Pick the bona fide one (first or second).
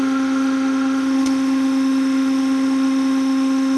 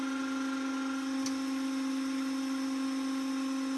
second